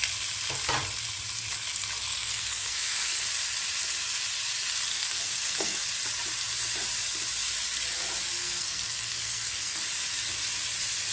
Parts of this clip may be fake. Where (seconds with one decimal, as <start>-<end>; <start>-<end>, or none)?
2.1-3.2; 4.9-5.8; 8.4-9.8